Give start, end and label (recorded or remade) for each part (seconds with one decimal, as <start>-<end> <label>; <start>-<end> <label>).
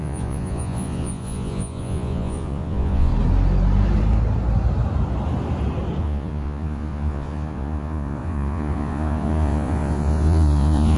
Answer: 0.0-3.1 remade; 3.1-6.0 recorded; 6.0-11.0 remade